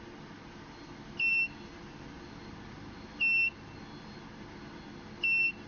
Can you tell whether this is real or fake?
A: real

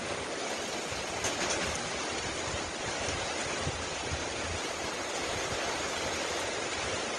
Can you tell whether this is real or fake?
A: real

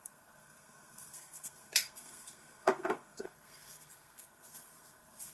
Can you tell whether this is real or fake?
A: fake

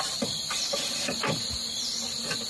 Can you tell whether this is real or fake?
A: real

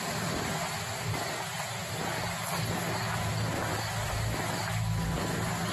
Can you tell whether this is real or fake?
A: real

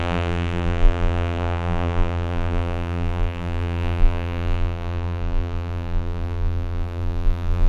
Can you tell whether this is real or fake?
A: fake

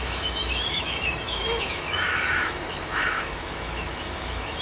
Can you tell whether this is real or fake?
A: fake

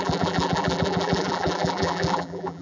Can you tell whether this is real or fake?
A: fake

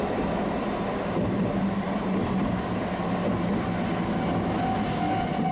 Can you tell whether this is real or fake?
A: real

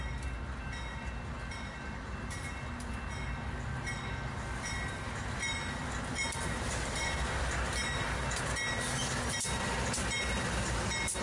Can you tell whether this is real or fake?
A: real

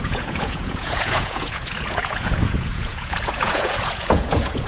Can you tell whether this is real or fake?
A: fake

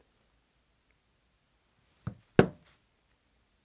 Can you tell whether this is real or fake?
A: real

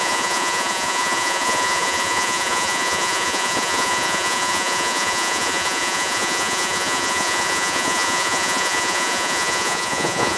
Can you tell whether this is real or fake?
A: fake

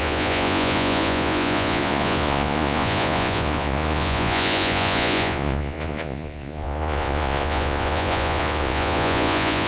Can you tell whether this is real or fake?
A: fake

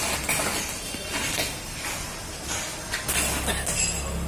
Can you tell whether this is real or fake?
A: real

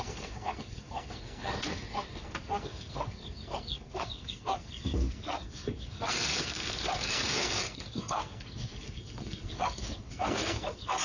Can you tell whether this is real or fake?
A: fake